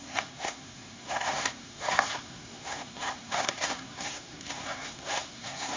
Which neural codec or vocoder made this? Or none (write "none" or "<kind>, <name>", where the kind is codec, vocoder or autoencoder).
codec, SNAC